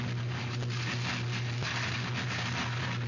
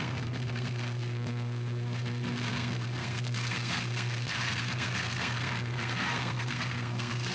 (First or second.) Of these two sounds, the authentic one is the first